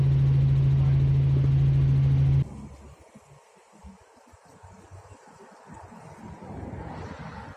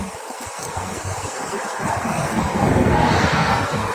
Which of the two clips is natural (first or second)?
first